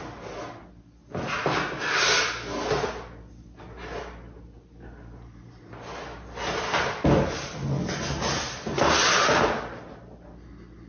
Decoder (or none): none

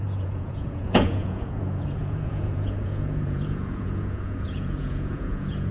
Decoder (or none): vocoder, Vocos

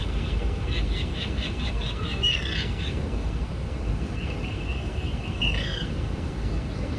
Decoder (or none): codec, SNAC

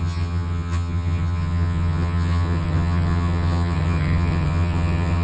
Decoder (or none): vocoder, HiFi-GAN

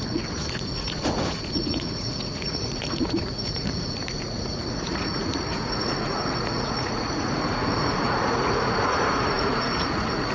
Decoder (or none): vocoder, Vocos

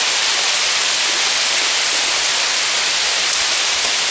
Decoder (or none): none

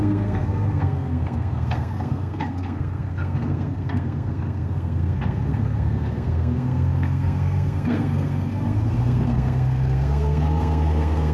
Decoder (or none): codec, SNAC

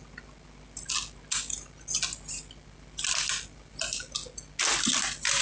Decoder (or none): none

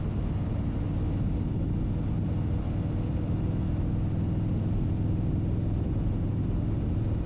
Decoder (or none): none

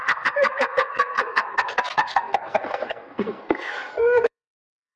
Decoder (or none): codec, SNAC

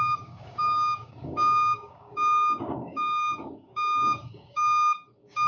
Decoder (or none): codec, DAC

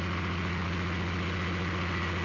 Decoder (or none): none